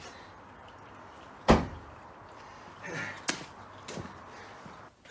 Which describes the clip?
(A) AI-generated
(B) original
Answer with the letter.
B